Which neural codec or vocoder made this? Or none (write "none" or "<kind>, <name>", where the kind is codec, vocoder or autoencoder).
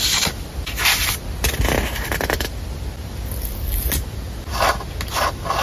none